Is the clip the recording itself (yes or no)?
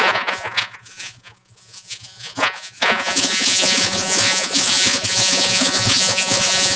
no